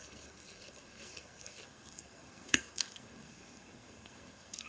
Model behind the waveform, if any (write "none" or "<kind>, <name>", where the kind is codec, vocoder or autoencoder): codec, SNAC